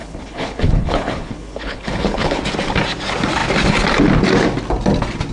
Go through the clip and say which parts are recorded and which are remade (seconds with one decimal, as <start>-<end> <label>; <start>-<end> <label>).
0.0-2.4 remade; 2.4-5.3 recorded